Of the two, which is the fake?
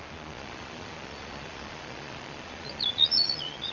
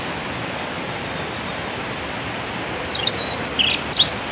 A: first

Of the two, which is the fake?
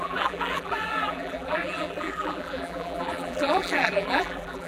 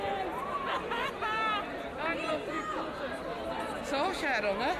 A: first